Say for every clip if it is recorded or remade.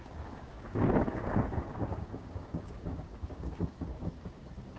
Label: remade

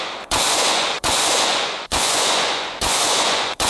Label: remade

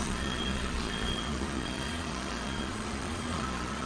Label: remade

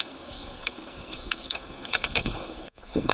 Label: remade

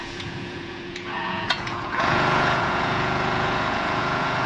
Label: remade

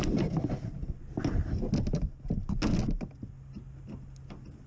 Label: recorded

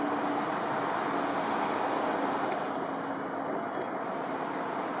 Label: recorded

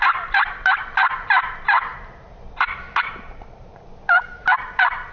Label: remade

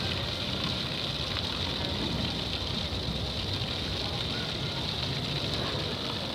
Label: recorded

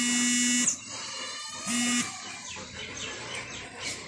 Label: recorded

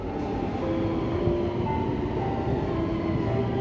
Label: recorded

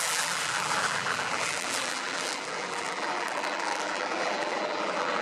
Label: remade